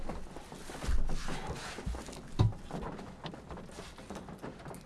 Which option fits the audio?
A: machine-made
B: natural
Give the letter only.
B